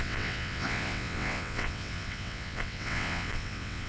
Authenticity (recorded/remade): remade